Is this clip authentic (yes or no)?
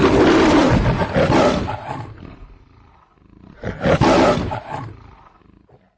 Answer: no